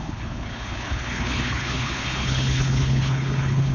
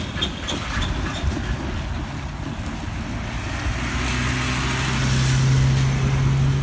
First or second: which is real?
second